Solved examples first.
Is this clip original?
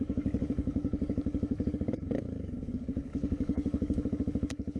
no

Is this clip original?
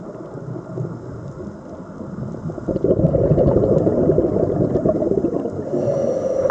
yes